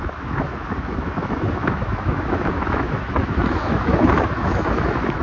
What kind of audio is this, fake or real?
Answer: fake